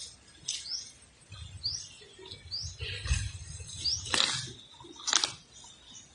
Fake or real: real